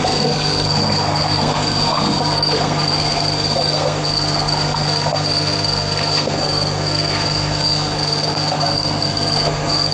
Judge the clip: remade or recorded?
remade